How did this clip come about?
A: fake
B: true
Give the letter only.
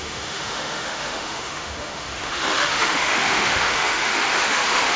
A